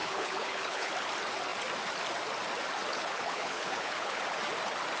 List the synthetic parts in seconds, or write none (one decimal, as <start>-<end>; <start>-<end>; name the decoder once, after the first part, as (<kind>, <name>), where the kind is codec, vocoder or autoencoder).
0.0-0.9 (codec, HILCodec); 2.9-4.2